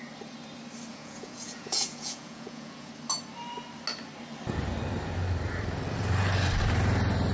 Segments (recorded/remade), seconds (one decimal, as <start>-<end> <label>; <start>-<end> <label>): 0.0-0.9 recorded; 0.9-2.9 remade; 2.9-7.3 recorded